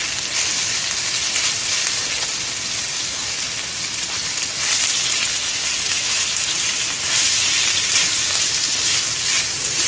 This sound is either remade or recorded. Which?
recorded